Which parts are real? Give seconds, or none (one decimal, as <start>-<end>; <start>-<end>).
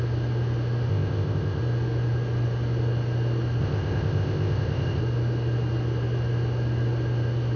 0.0-0.9; 1.6-3.6; 5.0-7.6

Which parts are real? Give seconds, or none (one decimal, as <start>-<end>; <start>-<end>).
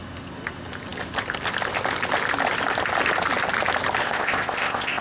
0.0-4.0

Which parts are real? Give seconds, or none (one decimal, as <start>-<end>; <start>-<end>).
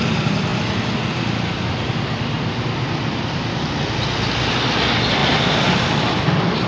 0.0-6.7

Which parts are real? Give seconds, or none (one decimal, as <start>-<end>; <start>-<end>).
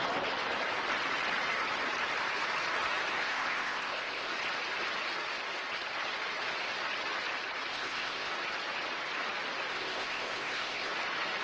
0.0-3.2; 4.3-7.7; 8.3-9.7; 10.9-11.4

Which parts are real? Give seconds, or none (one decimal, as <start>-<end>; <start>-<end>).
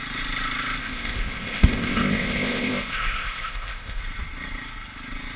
0.0-0.8; 4.0-5.4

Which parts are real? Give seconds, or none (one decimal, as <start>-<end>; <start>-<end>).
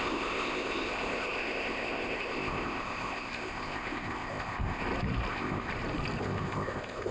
4.8-5.3; 5.7-6.2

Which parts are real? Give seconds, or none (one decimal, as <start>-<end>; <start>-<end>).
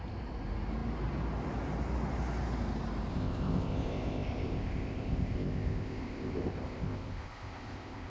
0.0-3.1